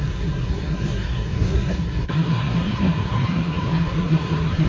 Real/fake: fake